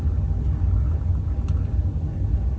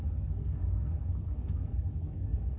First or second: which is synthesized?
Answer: second